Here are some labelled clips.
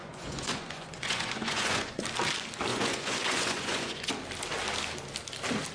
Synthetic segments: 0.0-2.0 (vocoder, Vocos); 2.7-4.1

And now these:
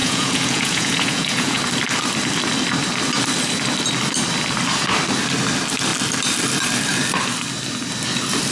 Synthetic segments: 0.0-1.6 (vocoder, Vocos)